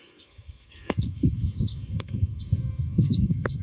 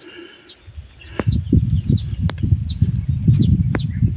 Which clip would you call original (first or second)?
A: second